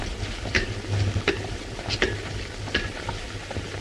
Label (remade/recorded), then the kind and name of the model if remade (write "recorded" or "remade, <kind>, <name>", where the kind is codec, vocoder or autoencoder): recorded